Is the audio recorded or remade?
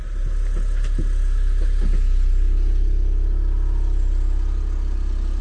recorded